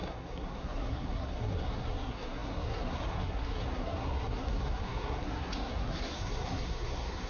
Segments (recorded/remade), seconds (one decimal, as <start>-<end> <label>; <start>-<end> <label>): 0.0-7.3 remade